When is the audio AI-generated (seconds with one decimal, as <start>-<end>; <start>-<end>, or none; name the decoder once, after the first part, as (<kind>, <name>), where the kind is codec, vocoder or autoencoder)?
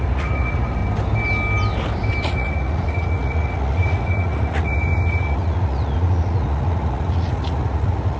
0.0-0.8 (vocoder, Vocos); 2.2-8.2